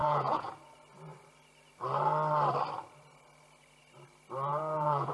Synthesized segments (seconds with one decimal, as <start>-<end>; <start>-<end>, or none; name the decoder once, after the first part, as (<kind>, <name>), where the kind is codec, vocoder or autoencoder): 0.0-0.5 (vocoder, Vocos); 4.5-5.1